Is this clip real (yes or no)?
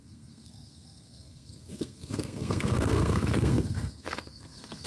no